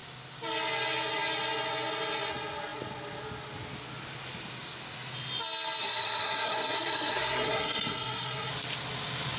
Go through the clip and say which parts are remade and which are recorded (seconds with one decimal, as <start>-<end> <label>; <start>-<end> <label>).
0.0-5.8 recorded; 5.8-8.5 remade; 8.5-9.4 recorded